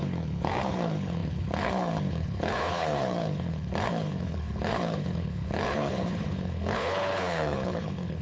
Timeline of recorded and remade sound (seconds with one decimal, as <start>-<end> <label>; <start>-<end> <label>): 0.0-8.2 remade